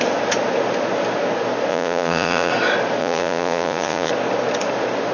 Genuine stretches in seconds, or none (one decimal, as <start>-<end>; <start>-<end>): 0.0-1.7; 2.5-3.0; 4.1-5.1